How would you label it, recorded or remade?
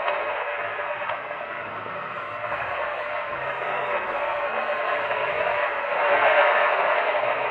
remade